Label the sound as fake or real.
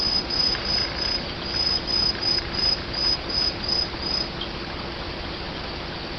real